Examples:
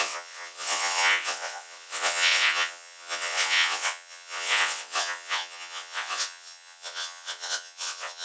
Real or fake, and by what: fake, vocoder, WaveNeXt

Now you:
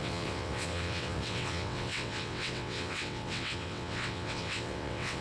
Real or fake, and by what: fake, vocoder, WaveNeXt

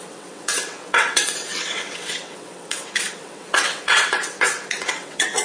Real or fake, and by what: fake, vocoder, WaveNeXt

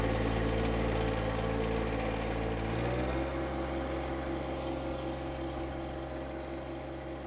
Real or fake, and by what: real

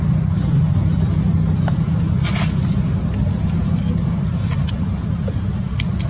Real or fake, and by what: real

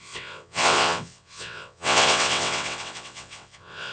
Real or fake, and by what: fake, vocoder, WaveNeXt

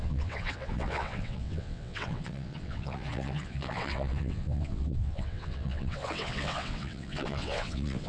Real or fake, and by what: fake, vocoder, WaveNeXt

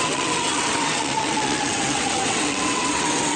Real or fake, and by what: fake, vocoder, WaveNeXt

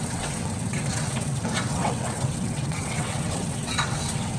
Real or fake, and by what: fake, vocoder, WaveNeXt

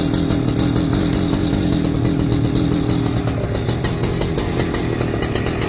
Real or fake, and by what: real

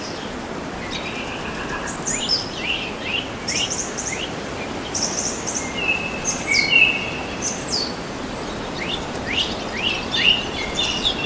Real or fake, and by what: real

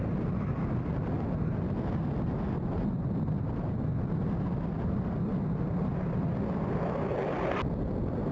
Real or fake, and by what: real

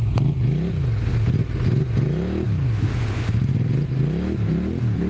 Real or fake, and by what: real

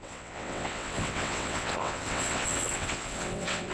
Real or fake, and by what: fake, vocoder, WaveNeXt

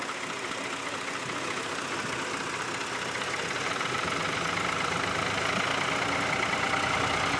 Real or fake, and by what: real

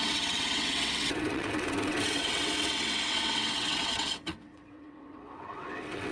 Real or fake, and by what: fake, vocoder, WaveNeXt